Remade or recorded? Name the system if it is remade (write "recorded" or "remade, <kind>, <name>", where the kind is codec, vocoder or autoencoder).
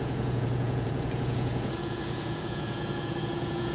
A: remade, vocoder, Vocos